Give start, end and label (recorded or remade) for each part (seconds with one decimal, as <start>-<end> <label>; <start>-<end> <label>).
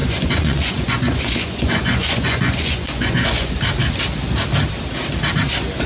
0.0-3.5 remade; 3.5-5.9 recorded